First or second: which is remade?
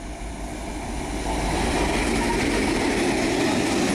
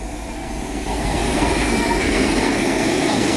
second